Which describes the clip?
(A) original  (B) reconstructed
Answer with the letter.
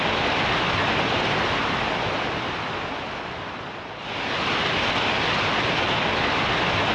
A